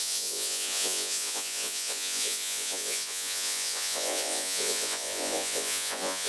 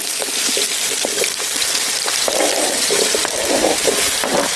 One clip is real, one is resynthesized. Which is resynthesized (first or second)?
first